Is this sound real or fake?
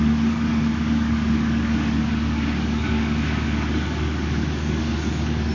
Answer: fake